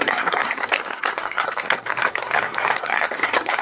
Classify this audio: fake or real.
fake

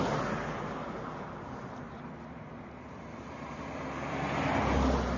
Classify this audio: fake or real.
real